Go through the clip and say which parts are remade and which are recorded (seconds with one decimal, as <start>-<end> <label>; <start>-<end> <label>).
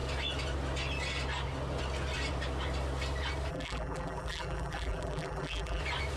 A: 0.0-3.5 recorded; 3.5-5.8 remade; 5.8-6.2 recorded